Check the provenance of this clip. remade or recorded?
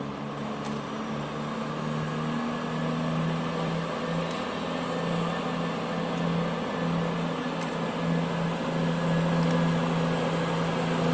recorded